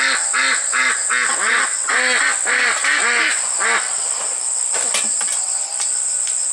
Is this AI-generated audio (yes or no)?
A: no